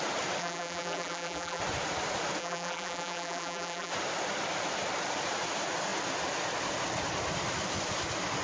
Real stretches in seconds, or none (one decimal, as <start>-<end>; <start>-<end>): 0.0-0.4; 1.6-2.4; 3.9-8.4